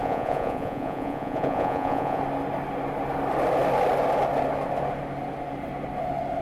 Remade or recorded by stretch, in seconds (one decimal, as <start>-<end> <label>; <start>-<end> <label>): 0.0-2.2 remade; 2.2-6.4 recorded